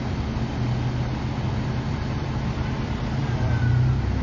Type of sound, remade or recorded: recorded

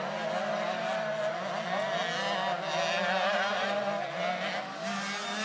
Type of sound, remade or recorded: recorded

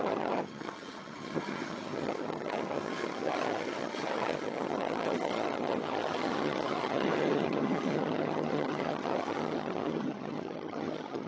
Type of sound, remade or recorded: remade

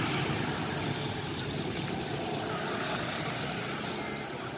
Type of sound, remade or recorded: recorded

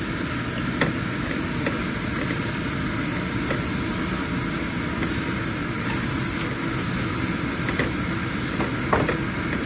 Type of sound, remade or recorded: recorded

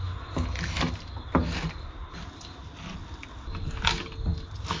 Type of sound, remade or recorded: recorded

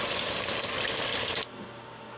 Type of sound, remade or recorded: recorded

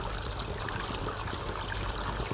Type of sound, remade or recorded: recorded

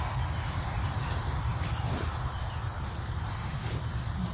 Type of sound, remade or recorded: recorded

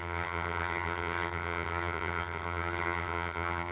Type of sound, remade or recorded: remade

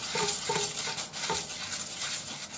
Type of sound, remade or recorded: recorded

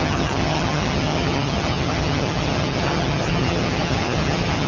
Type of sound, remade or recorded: remade